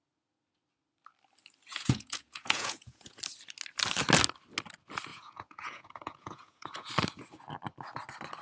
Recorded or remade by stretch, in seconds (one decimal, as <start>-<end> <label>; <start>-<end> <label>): 0.0-1.7 recorded; 1.7-3.2 remade; 3.2-5.1 recorded; 5.1-6.9 remade; 6.9-8.4 recorded